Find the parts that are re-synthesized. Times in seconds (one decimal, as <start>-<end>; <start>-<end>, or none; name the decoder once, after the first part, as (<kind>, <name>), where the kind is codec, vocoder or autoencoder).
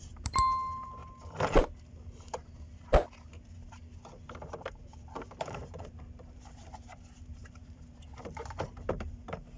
0.0-1.0 (vocoder, BigVGAN v2); 5.4-9.6